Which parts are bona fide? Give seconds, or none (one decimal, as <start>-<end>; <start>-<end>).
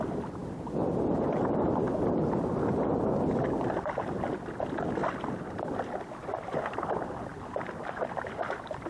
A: 0.4-4.4; 5.0-6.1; 7.3-7.9